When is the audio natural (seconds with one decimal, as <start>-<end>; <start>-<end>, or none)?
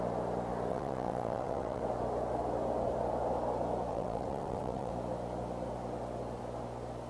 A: 0.0-0.7; 1.8-3.9; 4.9-7.1